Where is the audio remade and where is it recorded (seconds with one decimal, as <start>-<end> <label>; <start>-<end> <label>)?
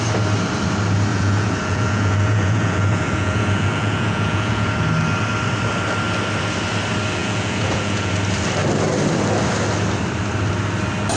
0.0-1.1 recorded; 1.1-4.7 remade; 4.7-7.2 recorded; 7.2-8.1 remade; 8.1-11.2 recorded